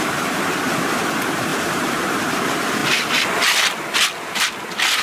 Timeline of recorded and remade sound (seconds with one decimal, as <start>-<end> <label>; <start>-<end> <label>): 0.0-2.8 remade; 2.8-5.0 recorded

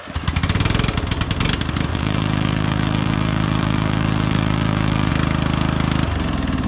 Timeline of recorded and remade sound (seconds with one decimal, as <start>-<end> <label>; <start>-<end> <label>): 0.0-1.9 recorded; 1.9-5.1 remade; 5.1-6.7 recorded

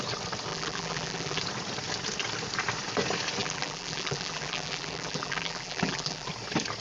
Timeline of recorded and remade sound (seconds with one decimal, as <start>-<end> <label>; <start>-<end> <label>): 0.0-0.5 recorded; 0.5-1.4 remade; 1.4-3.4 recorded; 3.4-6.3 remade; 6.3-6.8 recorded